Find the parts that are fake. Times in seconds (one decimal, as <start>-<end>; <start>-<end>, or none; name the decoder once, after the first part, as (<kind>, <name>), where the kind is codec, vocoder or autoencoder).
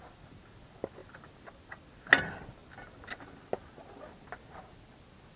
none